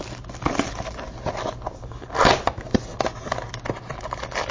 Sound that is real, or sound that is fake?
real